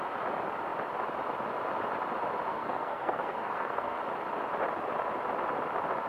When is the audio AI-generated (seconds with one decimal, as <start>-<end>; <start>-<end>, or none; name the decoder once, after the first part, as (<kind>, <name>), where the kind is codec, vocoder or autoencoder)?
2.5-4.0 (codec, SNAC)